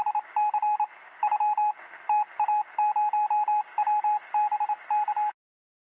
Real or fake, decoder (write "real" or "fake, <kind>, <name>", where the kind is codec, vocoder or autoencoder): real